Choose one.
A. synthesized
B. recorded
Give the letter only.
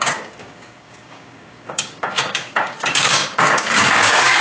A